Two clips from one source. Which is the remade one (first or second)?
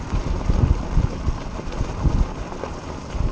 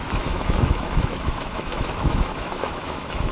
second